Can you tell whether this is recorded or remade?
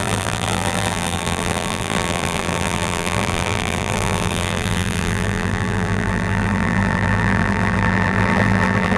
remade